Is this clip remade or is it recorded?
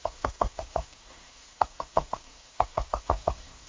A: remade